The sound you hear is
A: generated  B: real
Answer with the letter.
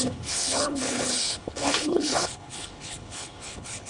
A